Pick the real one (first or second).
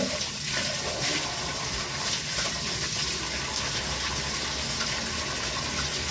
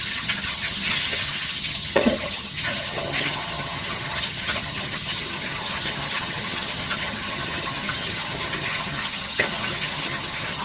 first